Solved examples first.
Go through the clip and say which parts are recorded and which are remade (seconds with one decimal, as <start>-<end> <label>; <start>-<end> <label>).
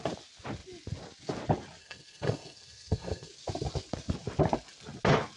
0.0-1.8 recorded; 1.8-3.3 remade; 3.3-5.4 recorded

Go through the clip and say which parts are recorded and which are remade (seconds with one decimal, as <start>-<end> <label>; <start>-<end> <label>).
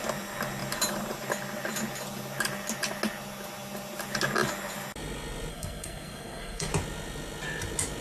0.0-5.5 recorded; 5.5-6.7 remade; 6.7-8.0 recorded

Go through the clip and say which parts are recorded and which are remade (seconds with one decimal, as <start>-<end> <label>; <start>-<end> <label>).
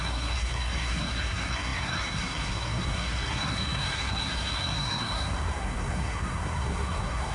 0.0-7.3 remade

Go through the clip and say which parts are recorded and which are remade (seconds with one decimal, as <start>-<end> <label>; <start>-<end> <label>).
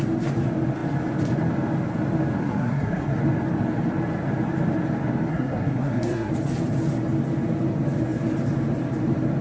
0.0-2.4 recorded; 2.4-3.2 remade; 3.2-5.3 recorded; 5.3-6.3 remade; 6.3-9.4 recorded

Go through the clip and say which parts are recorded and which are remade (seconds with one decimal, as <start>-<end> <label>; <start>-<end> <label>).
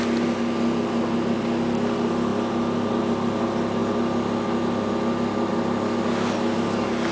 0.0-7.1 recorded